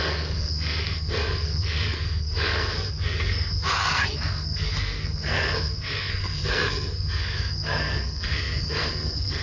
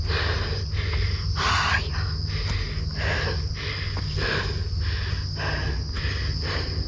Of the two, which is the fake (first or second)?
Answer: first